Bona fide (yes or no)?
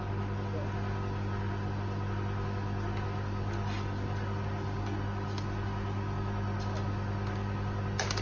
yes